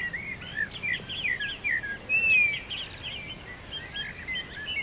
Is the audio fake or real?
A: real